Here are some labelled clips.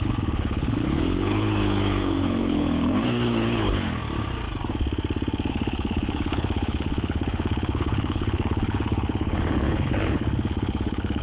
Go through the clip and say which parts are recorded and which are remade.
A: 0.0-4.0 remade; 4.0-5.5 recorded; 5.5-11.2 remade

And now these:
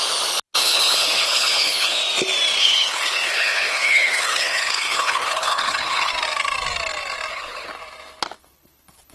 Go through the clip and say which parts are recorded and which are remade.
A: 0.0-0.6 recorded; 0.6-2.0 remade; 2.0-2.6 recorded; 2.6-6.1 remade; 6.1-7.3 recorded; 7.3-7.7 remade; 7.7-8.4 recorded; 8.4-9.1 remade

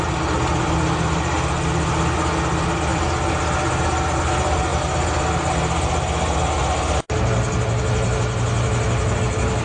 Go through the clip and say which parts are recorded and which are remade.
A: 0.0-9.6 recorded

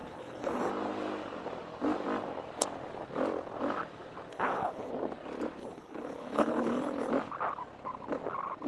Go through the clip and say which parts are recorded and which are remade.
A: 0.0-0.7 remade; 0.7-4.3 recorded; 4.3-4.9 remade; 4.9-5.6 recorded; 5.6-7.1 remade; 7.1-8.7 recorded

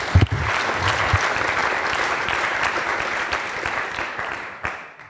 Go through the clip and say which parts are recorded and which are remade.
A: 0.0-5.1 recorded